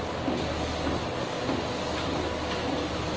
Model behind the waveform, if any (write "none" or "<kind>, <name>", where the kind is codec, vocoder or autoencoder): none